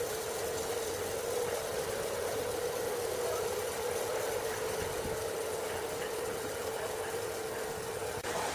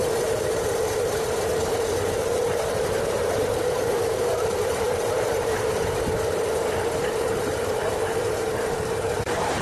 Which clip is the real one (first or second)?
first